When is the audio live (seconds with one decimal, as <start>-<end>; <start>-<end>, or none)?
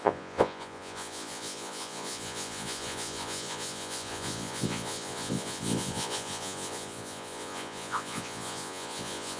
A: none